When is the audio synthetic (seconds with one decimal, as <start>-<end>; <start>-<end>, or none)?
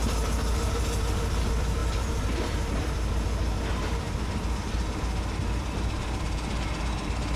none